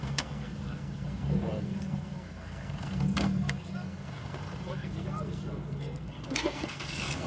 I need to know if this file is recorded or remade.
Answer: remade